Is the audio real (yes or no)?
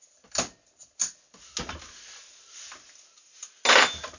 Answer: yes